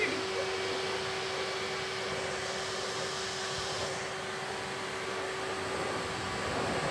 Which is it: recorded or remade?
recorded